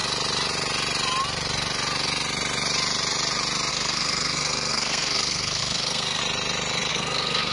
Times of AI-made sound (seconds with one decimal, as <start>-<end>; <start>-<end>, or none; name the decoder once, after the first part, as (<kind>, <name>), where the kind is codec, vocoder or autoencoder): 3.7-6.2 (codec, SNAC); 6.9-7.5